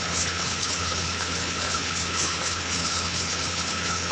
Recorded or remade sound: remade